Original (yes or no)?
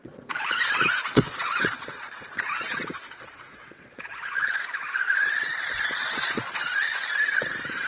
no